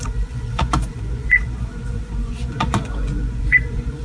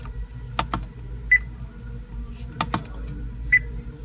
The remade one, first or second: first